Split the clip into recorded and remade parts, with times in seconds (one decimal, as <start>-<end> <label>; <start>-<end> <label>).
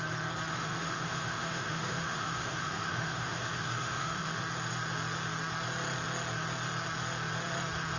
0.0-0.5 recorded; 0.5-4.4 remade; 4.4-8.0 recorded